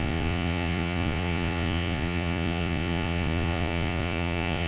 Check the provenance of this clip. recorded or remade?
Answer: remade